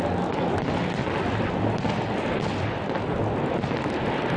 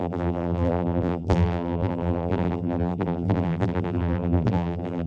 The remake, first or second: second